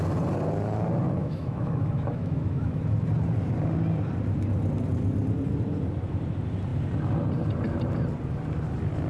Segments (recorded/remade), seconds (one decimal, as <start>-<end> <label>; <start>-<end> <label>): 0.0-1.2 recorded; 1.2-2.8 remade; 2.8-9.1 recorded